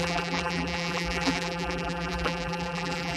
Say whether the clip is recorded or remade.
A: remade